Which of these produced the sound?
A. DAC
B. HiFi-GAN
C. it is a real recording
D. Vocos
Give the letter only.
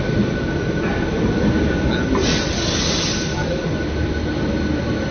C